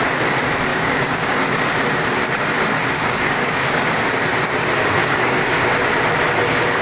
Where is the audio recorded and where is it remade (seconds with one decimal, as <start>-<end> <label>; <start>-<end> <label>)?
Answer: 0.0-0.7 recorded; 0.7-1.4 remade; 1.4-3.0 recorded; 3.0-3.8 remade; 3.8-5.0 recorded; 5.0-5.7 remade; 5.7-6.8 recorded